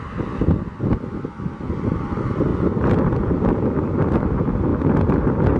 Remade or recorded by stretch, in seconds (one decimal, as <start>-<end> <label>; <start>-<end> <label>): 0.0-5.6 recorded